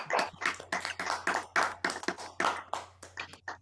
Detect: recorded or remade recorded